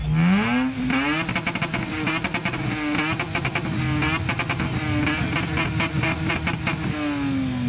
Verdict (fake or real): real